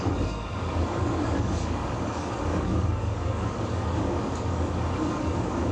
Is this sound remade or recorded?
remade